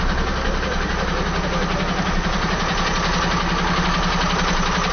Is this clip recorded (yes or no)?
yes